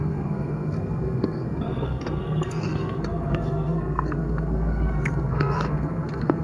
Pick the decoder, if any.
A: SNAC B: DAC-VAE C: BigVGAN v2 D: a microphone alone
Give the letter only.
A